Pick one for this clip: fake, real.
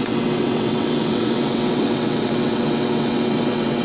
fake